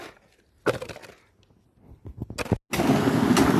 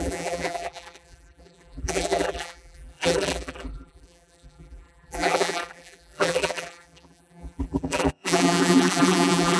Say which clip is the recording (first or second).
first